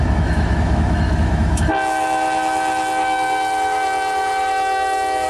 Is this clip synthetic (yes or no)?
yes